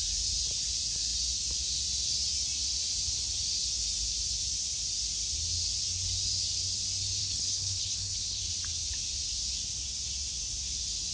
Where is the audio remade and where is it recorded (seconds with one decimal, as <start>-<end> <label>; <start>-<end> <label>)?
0.0-7.2 recorded; 7.2-8.4 remade; 8.4-11.1 recorded